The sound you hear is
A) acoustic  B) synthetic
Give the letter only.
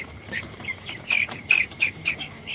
B